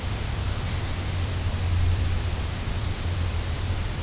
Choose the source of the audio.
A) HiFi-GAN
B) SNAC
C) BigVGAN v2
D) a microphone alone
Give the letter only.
C